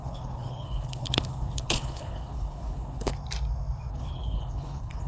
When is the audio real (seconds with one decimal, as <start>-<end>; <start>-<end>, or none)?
3.1-3.9